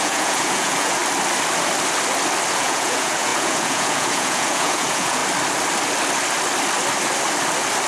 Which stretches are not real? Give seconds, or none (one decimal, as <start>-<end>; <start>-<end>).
0.0-1.0; 2.5-5.2